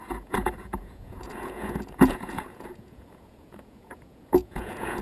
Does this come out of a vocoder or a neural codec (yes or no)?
yes